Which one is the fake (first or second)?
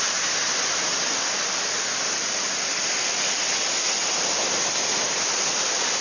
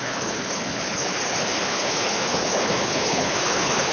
second